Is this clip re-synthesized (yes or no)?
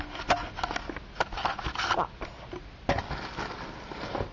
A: no